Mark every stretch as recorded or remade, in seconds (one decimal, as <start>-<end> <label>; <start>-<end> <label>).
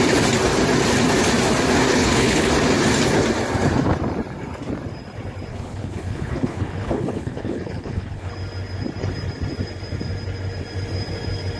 0.0-1.9 recorded; 1.9-2.5 remade; 2.5-5.5 recorded; 5.5-8.3 remade; 8.3-11.6 recorded